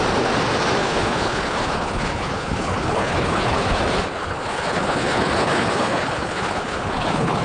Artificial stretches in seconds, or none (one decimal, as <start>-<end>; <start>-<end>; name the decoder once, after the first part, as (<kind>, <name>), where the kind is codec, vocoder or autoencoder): 0.8-3.8 (codec, HILCodec); 4.2-7.4